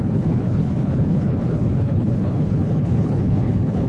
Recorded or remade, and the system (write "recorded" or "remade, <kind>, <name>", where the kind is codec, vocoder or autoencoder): remade, codec, HILCodec